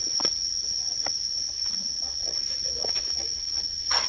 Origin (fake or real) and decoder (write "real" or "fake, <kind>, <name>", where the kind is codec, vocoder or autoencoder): fake, vocoder, Vocos